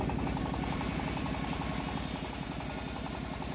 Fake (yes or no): no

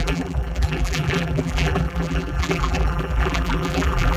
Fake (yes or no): yes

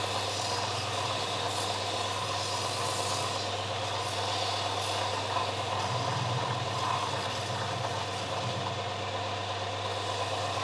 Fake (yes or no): no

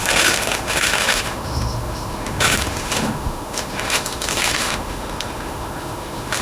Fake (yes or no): yes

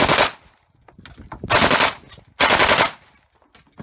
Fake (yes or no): no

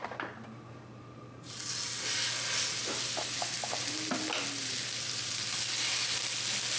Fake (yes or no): no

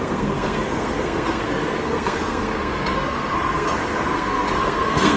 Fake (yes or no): yes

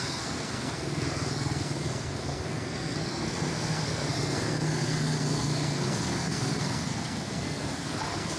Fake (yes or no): yes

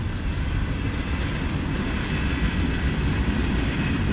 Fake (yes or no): no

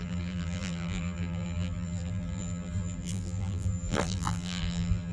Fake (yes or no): yes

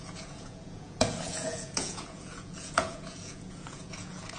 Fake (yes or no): yes